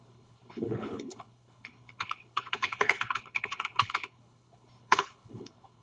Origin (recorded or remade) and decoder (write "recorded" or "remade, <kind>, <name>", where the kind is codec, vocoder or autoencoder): remade, codec, HILCodec